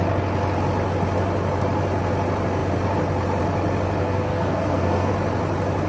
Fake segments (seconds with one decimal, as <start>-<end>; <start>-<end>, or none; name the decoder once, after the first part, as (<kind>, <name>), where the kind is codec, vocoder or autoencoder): 4.0-5.1 (codec, SNAC)